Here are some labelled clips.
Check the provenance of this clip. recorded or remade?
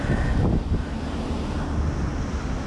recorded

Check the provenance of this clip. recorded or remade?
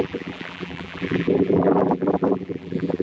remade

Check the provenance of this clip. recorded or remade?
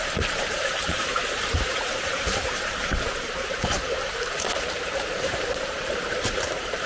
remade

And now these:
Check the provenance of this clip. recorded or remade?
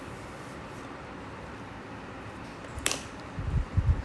remade